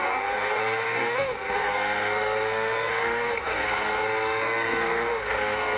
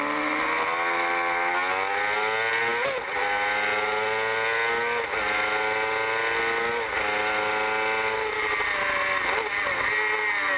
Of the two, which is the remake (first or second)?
first